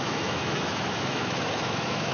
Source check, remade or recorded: remade